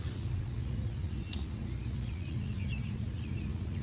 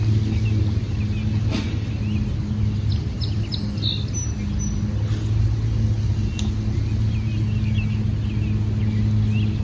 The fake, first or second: first